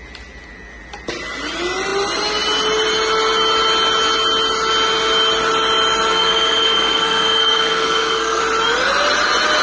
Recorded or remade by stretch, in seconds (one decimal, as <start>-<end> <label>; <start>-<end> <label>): 0.0-6.1 recorded; 6.1-8.4 remade; 8.4-9.6 recorded